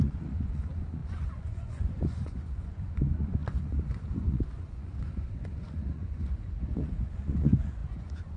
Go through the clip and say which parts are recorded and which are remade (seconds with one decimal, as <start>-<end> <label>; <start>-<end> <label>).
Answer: 0.0-8.4 remade